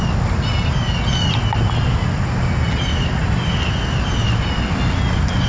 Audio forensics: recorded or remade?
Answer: recorded